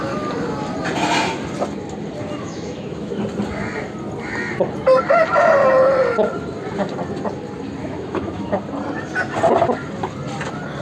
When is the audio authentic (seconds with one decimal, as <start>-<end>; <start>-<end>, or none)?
0.0-2.4; 3.2-7.8; 8.5-10.8